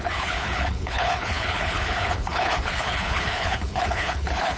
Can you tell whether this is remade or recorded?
remade